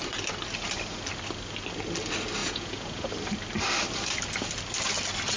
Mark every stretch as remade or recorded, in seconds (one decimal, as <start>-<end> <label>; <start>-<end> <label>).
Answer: 0.0-2.4 recorded; 2.4-3.1 remade; 3.1-5.4 recorded